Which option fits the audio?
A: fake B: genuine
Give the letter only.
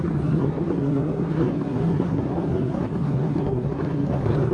A